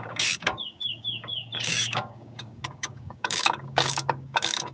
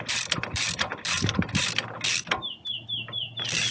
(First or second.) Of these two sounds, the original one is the second